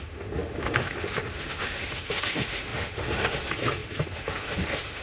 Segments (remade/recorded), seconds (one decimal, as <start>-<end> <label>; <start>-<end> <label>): 0.0-5.0 remade